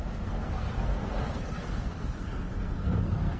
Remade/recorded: remade